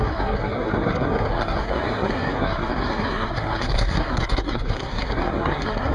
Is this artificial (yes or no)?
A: yes